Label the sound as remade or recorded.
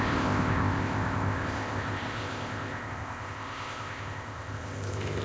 remade